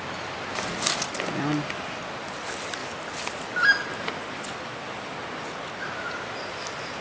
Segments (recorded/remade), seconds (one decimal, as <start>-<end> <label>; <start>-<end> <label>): 0.0-7.0 recorded

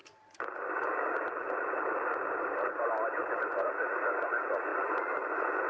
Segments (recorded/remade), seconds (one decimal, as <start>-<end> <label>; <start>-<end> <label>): 0.0-3.2 remade; 3.2-4.7 recorded; 4.7-5.3 remade; 5.3-5.7 recorded

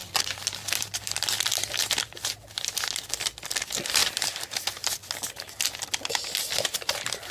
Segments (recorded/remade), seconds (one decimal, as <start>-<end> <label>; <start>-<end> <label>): 0.0-2.2 remade; 2.2-4.0 recorded; 4.0-4.7 remade; 4.7-7.3 recorded

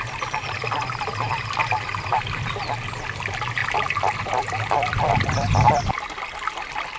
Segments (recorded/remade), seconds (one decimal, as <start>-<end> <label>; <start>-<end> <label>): 0.0-1.3 recorded; 1.3-2.6 remade; 2.6-7.0 recorded

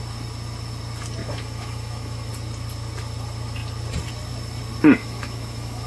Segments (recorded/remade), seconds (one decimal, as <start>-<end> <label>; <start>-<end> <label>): 0.0-1.2 recorded; 1.2-2.3 remade; 2.3-5.0 recorded; 5.0-5.9 remade